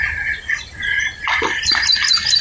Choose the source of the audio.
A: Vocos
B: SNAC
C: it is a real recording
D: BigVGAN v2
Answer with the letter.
C